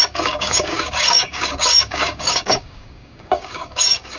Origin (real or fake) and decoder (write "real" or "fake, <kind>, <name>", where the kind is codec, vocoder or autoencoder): fake, codec, DAC